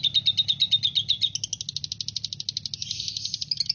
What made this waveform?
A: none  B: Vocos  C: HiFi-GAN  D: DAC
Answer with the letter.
A